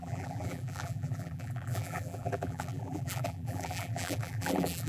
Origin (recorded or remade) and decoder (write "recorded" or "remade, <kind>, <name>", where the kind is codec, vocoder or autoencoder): remade, vocoder, BigVGAN v2